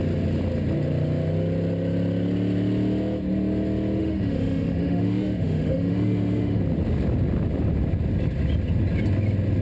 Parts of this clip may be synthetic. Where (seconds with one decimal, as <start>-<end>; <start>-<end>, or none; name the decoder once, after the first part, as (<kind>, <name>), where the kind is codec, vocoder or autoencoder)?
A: 4.0-6.6 (autoencoder, DAC-VAE)